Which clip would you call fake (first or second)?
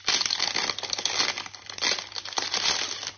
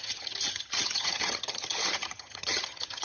second